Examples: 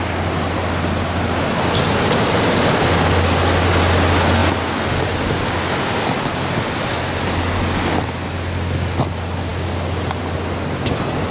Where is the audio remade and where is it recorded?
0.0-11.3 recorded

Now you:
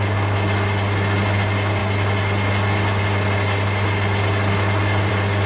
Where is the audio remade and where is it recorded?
0.0-5.5 recorded

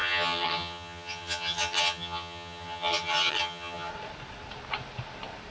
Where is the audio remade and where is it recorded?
0.0-3.9 remade; 3.9-5.5 recorded

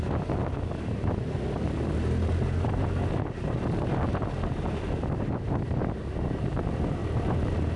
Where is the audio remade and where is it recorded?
0.0-7.0 recorded; 7.0-7.8 remade

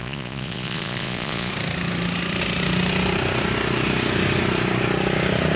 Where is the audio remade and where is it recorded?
0.0-1.5 remade; 1.5-5.6 recorded